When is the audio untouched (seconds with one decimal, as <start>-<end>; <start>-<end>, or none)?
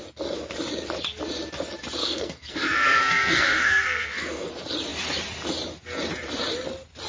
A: 0.0-2.0; 4.5-7.1